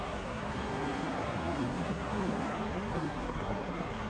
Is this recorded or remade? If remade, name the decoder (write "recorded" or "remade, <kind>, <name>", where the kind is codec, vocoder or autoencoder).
remade, codec, SNAC